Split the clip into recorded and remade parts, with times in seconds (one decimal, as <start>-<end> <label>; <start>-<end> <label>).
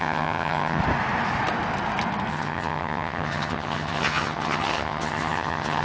0.0-0.8 remade; 0.8-2.3 recorded; 2.3-5.8 remade